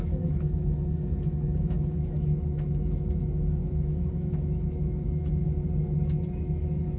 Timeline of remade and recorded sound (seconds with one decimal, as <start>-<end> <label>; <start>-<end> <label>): 0.0-7.0 remade

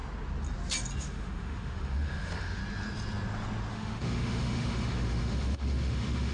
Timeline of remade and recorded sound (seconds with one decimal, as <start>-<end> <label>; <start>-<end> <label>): 0.0-1.0 recorded; 1.0-2.6 remade; 2.6-3.7 recorded; 3.7-6.3 remade

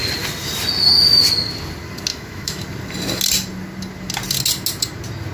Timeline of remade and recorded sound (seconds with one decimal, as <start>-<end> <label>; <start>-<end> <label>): 0.0-2.1 recorded; 2.1-2.6 remade; 2.6-5.3 recorded